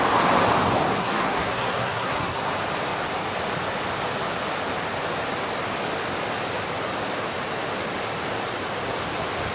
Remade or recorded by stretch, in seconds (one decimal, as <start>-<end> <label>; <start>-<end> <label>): 0.0-1.0 recorded; 1.0-2.5 remade; 2.5-9.5 recorded